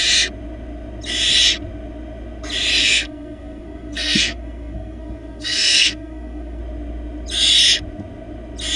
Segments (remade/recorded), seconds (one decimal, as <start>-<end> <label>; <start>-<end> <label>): 0.0-2.8 recorded; 2.8-6.6 remade; 6.6-8.8 recorded